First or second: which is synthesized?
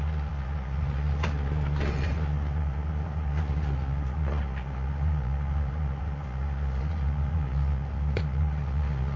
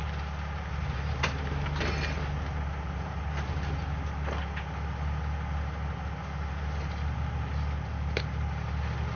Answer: first